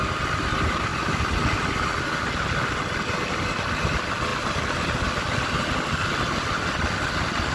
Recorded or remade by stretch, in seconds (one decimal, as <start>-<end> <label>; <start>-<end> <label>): 0.0-7.5 recorded